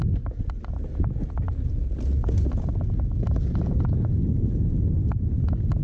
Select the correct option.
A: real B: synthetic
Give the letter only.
A